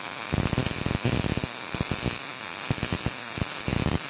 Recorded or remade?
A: recorded